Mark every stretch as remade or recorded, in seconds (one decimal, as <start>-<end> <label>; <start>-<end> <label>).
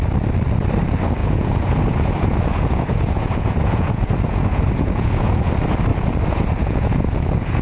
0.0-1.2 recorded; 1.2-5.5 remade; 5.5-5.9 recorded; 5.9-7.6 remade